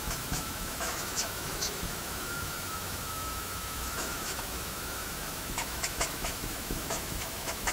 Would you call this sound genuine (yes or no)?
no